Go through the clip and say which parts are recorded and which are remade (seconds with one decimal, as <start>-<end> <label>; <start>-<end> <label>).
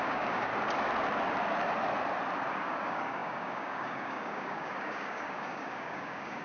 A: 0.0-0.5 remade; 0.5-2.5 recorded; 2.5-6.4 remade